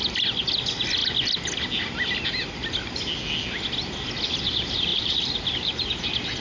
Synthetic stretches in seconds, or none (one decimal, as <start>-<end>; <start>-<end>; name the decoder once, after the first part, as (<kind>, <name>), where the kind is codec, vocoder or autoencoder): 4.9-6.0 (vocoder, BigVGAN v2)